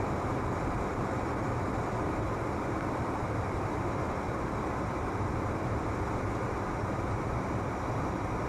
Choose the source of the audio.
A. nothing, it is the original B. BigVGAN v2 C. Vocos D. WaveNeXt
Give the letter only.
B